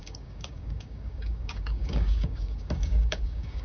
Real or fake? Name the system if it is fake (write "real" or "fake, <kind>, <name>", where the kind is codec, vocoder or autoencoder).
fake, codec, DAC